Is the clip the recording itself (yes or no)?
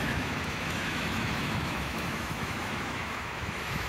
no